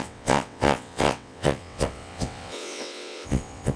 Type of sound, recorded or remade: remade